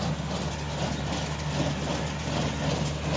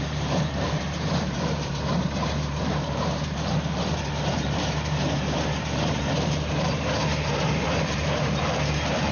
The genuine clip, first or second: first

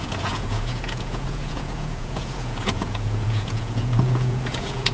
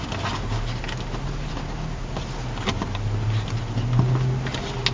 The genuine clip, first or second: second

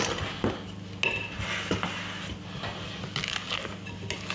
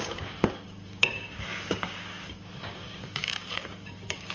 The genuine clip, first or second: first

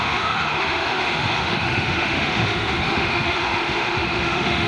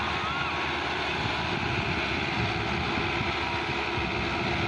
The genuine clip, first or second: second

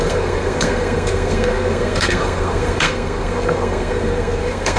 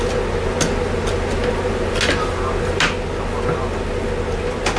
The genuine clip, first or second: second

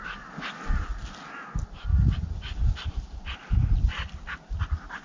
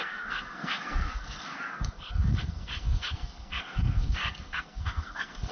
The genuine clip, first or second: first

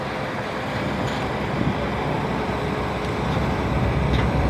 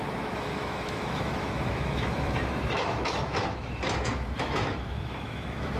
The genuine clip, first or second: first